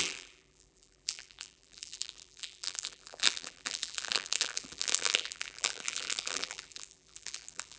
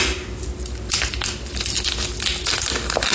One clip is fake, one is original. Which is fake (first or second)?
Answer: first